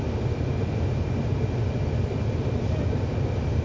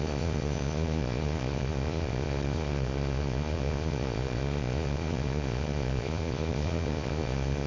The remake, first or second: second